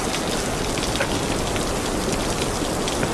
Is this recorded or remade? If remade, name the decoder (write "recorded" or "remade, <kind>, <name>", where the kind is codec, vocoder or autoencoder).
recorded